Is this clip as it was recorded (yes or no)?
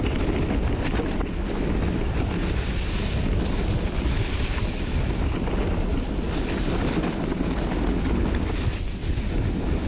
yes